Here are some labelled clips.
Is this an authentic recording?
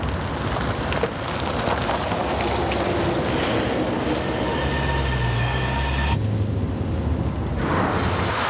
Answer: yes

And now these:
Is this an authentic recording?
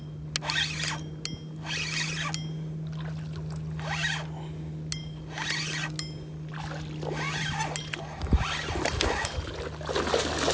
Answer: yes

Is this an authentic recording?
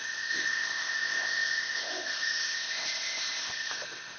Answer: no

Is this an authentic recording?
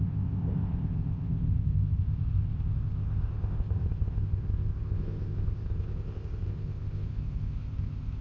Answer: no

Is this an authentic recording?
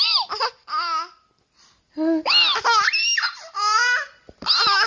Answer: yes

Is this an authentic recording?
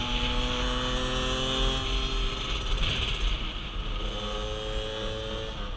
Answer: yes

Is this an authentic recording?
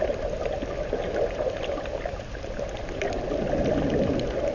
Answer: yes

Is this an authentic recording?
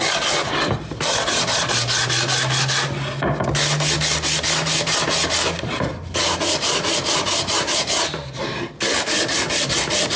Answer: yes